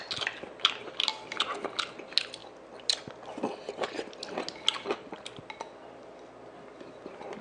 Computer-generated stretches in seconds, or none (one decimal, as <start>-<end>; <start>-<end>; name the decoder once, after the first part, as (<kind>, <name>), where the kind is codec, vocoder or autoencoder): none